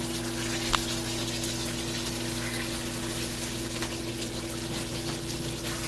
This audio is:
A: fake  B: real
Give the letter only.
B